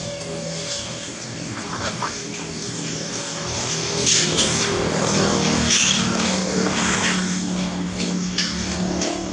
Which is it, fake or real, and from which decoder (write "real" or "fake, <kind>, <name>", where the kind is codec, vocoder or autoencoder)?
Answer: fake, codec, DAC